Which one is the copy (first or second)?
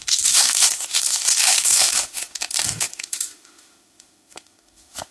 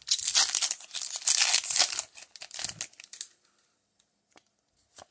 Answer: first